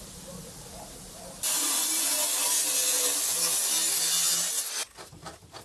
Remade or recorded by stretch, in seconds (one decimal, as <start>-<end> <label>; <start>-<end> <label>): 0.0-5.6 recorded